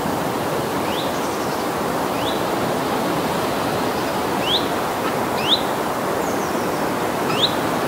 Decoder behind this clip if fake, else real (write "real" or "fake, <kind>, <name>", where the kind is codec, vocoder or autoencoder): real